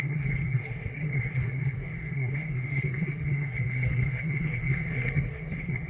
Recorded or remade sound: remade